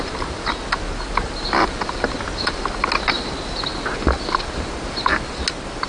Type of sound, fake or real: real